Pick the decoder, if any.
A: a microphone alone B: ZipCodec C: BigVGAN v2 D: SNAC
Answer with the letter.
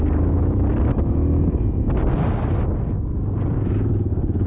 A